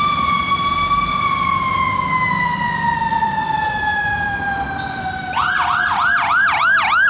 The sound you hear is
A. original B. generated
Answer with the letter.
A